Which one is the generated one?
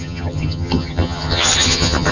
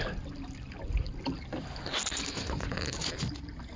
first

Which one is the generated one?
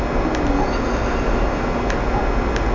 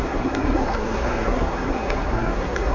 second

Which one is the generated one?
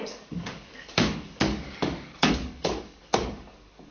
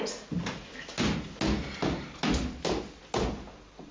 first